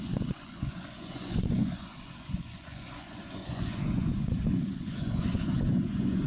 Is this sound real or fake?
fake